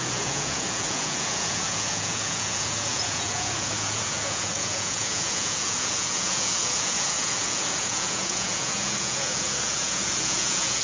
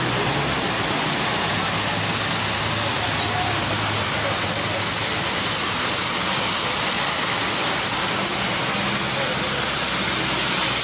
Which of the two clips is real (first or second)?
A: second